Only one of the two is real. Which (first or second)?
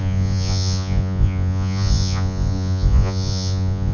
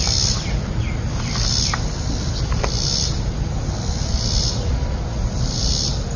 second